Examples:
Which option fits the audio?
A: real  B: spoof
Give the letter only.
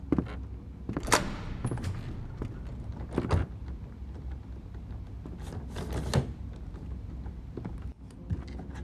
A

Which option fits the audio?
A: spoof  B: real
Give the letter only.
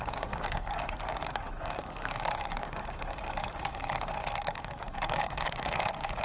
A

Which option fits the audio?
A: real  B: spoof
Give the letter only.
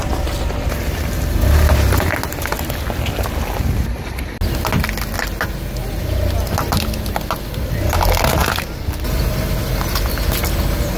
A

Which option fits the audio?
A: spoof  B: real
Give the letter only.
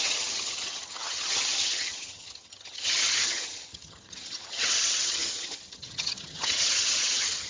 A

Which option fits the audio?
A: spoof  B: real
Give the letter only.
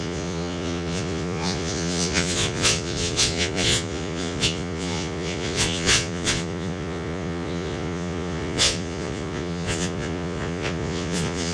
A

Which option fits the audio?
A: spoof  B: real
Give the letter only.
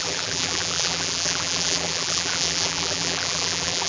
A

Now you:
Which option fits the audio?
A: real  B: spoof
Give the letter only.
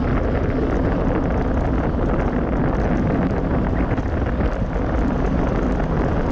A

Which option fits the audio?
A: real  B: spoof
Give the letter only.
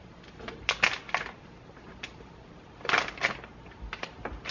A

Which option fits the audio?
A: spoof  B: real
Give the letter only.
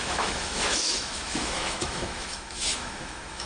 A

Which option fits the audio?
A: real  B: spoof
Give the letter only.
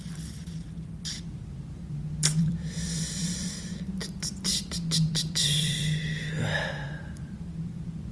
B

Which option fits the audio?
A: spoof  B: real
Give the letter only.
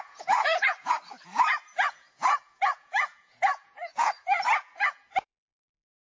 A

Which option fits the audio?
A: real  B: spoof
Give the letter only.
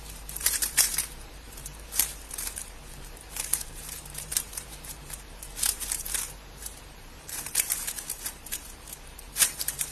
B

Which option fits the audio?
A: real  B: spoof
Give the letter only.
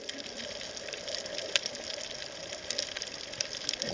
B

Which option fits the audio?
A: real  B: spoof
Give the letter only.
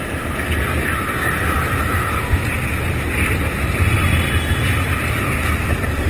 A